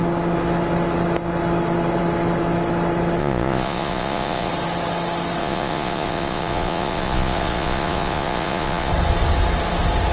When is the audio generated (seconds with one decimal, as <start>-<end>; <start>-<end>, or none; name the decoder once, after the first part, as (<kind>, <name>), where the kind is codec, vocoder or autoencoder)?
3.2-4.5 (vocoder, Vocos); 5.4-8.9